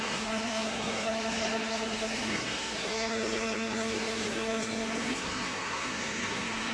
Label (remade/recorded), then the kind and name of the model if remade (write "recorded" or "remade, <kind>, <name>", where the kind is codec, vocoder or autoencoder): remade, codec, SNAC